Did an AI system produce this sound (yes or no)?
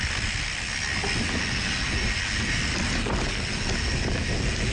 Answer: no